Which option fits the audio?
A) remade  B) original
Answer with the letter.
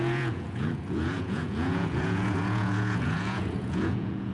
A